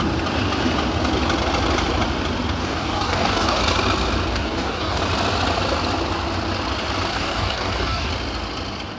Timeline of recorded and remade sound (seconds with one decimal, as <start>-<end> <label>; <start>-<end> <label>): 0.0-2.6 recorded; 2.6-3.6 remade; 3.6-4.3 recorded; 4.3-5.0 remade; 5.0-7.1 recorded; 7.1-8.1 remade; 8.1-9.0 recorded